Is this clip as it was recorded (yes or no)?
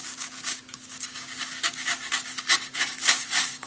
no